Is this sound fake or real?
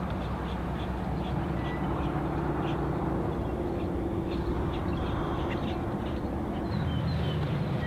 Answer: real